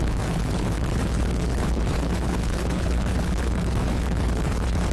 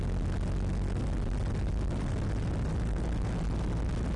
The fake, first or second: first